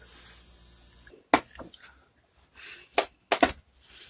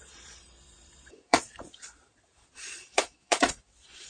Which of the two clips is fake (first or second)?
second